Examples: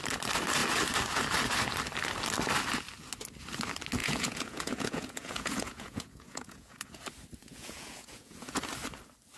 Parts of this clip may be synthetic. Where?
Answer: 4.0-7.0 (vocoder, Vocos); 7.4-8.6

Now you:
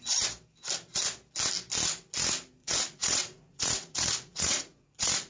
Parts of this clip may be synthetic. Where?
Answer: 2.6-5.3 (vocoder, Vocos)

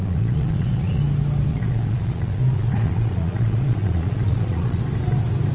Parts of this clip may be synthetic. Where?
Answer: 0.0-1.0 (vocoder, Vocos); 1.5-4.8

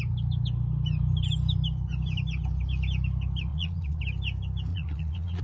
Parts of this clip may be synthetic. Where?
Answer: 3.5-4.0 (vocoder, Vocos); 4.7-5.4

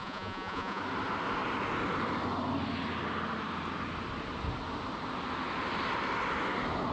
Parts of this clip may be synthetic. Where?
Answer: 0.0-0.8 (vocoder, Vocos)

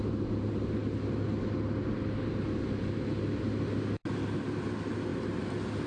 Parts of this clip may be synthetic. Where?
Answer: none

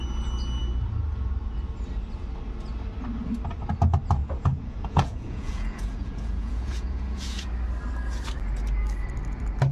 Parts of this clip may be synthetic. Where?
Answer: 4.2-7.5 (vocoder, Vocos)

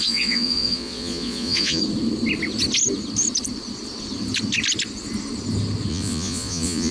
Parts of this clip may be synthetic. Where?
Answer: 0.0-1.8 (vocoder, Vocos); 5.9-6.9